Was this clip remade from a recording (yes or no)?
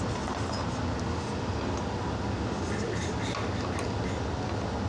no